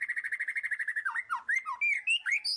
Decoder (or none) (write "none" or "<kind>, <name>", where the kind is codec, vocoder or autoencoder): none